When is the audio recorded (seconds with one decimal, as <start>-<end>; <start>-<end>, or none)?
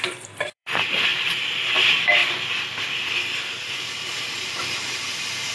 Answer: 2.2-3.7